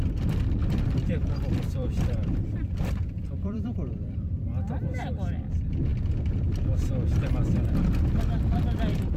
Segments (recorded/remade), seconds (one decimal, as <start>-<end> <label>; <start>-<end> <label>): 0.0-0.6 recorded; 0.6-4.4 remade; 4.4-9.2 recorded